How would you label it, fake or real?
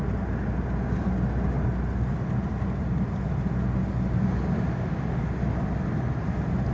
real